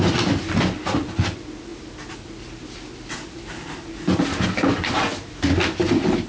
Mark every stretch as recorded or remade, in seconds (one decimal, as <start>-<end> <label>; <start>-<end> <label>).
0.0-6.3 recorded